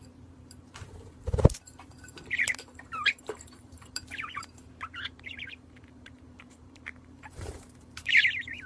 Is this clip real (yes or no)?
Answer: no